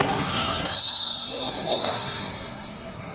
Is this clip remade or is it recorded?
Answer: remade